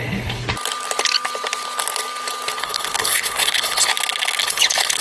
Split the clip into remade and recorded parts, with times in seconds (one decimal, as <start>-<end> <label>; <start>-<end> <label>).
0.0-0.4 remade; 0.4-2.6 recorded; 2.6-3.9 remade; 3.9-4.4 recorded; 4.4-5.0 remade

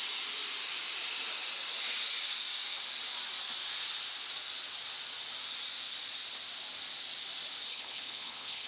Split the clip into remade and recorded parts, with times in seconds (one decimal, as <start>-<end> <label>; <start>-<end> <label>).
0.0-7.7 recorded; 7.7-8.7 remade